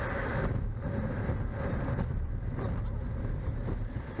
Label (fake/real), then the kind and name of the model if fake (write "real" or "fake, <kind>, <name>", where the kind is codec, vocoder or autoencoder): real